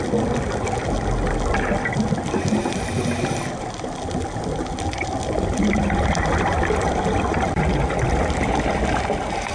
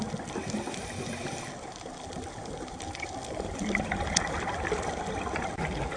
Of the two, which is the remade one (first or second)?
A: second